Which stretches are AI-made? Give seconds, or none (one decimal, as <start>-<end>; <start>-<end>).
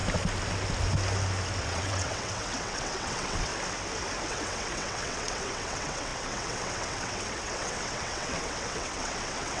1.6-3.5; 4.3-9.6